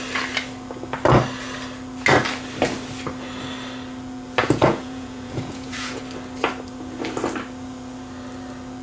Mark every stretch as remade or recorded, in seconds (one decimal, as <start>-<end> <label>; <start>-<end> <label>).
0.0-4.4 recorded; 4.4-6.0 remade; 6.0-8.8 recorded